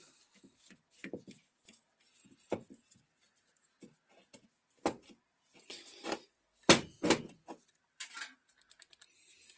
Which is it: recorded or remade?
recorded